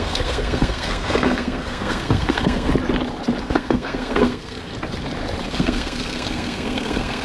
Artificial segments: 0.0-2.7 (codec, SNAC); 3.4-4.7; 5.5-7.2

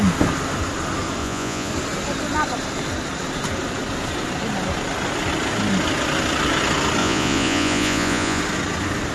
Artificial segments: 1.2-1.7 (vocoder, Vocos); 7.0-8.4

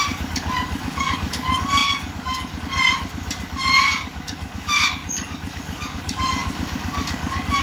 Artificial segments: 0.0-7.6 (codec, DAC)

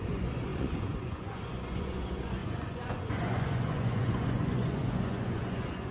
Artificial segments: 0.0-5.9 (vocoder, Vocos)

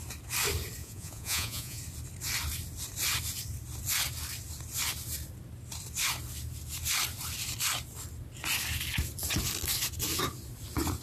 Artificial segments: 0.8-1.8 (vocoder, Vocos)

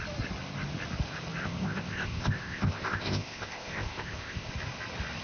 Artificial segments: 1.4-4.5 (codec, ZipCodec)